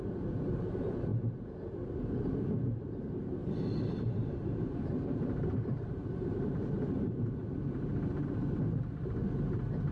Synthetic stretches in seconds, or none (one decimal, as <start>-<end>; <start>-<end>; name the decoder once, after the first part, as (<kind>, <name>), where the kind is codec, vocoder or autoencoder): 0.0-1.1 (vocoder, BigVGAN v2); 2.2-3.4; 3.9-7.4